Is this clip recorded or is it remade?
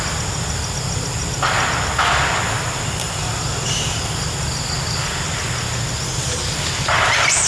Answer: recorded